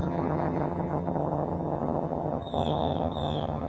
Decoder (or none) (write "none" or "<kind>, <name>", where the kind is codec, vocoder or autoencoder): vocoder, HiFi-GAN